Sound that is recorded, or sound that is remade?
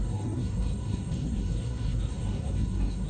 remade